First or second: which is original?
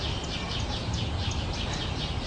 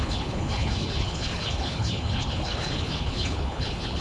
first